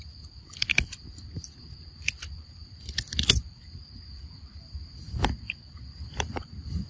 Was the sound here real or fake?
real